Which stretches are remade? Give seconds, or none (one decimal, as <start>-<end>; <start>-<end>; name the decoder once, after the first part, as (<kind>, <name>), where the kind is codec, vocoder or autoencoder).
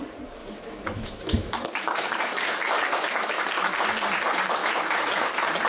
0.4-3.4 (autoencoder, DAC-VAE); 4.6-5.3